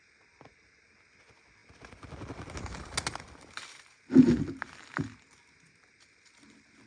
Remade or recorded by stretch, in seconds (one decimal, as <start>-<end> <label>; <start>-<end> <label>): 0.0-6.9 recorded